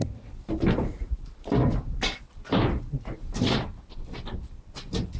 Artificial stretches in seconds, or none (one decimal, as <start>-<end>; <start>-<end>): 0.0-3.7; 4.5-5.2